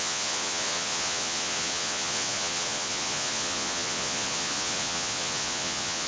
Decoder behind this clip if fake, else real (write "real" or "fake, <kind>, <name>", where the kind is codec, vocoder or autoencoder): fake, vocoder, Vocos